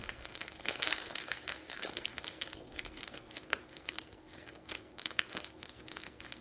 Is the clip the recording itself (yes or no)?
no